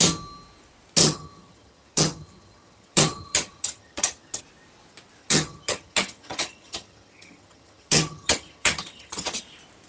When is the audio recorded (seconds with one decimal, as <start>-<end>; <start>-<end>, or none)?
0.0-1.0; 4.4-5.2; 9.4-9.9